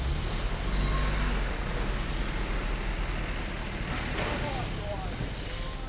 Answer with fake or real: real